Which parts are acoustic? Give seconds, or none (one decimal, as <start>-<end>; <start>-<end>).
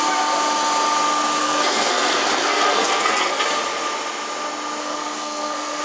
0.0-1.4; 3.4-4.8